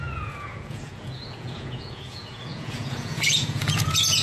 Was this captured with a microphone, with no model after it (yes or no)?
no